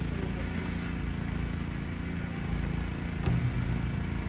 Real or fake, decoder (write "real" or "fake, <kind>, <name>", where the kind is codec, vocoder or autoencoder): real